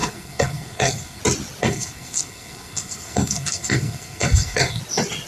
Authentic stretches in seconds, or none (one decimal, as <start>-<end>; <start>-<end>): 1.2-1.6; 4.8-5.3